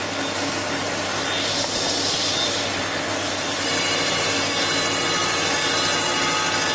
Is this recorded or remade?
recorded